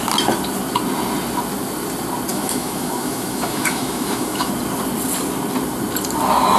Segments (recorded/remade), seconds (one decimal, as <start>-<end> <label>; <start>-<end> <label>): 0.0-2.3 recorded; 2.3-4.5 remade; 4.5-6.6 recorded